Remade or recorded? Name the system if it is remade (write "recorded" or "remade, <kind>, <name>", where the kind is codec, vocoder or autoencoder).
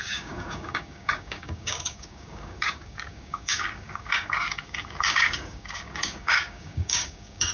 remade, codec, DAC